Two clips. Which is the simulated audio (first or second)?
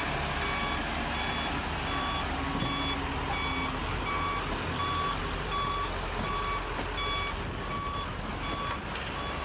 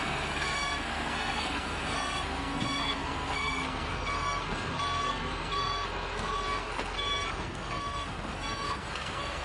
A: second